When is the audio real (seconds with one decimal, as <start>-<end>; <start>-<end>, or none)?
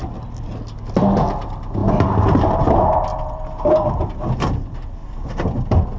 0.0-3.1; 4.1-5.0